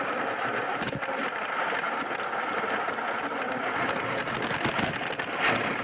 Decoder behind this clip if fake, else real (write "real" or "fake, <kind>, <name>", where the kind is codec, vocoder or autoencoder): real